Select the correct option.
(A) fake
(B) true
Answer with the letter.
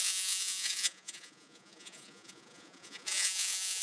A